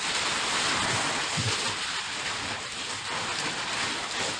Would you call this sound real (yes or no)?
yes